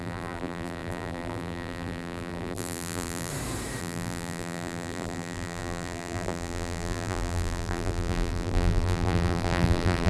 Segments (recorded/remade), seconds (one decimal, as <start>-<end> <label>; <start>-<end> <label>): 0.0-3.3 remade; 3.3-3.8 recorded; 3.8-10.1 remade